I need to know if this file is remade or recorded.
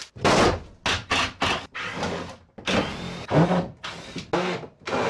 recorded